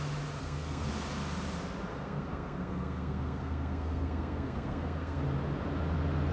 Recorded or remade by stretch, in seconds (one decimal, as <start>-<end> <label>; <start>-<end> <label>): 0.0-0.4 recorded; 0.4-0.9 remade; 0.9-1.9 recorded; 1.9-5.2 remade; 5.2-6.3 recorded